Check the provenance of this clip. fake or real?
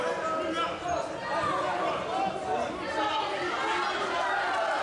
real